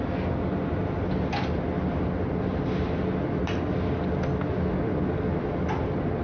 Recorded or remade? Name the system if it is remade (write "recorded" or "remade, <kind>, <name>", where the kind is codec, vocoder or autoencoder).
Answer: recorded